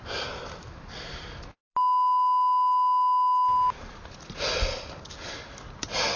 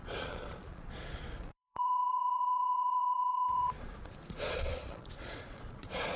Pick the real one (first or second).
first